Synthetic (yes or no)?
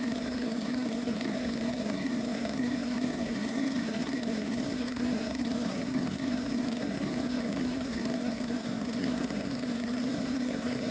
yes